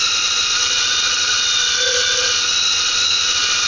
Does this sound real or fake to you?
fake